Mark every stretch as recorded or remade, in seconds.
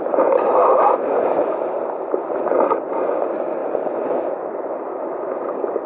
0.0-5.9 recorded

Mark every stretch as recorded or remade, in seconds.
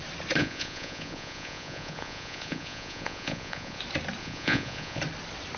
0.0-0.4 recorded; 0.4-3.8 remade; 3.8-4.2 recorded; 4.2-5.0 remade; 5.0-5.6 recorded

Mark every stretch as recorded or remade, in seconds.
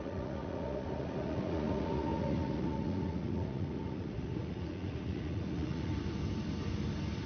0.0-5.9 remade; 5.9-7.3 recorded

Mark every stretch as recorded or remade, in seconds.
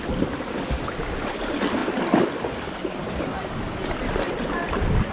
0.0-5.1 recorded